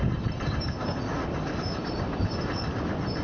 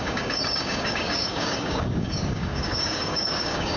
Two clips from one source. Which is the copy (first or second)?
second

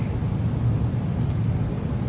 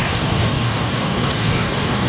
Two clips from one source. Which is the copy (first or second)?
second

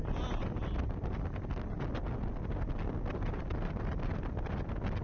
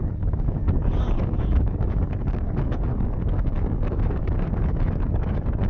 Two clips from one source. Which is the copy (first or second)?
second